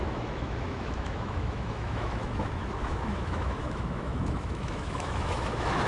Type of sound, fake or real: fake